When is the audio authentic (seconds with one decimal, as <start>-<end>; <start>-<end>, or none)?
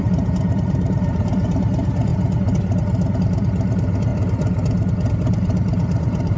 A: 2.1-3.1; 4.1-5.1